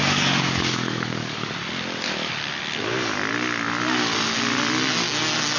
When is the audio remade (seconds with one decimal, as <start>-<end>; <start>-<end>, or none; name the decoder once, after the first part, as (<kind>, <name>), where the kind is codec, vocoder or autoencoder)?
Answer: 0.0-1.5 (codec, DAC)